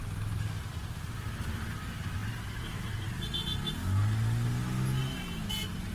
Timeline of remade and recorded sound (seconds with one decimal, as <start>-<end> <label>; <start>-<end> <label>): 0.0-5.9 recorded